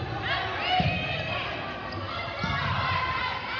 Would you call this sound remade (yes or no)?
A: no